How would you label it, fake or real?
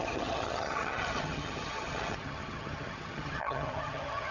fake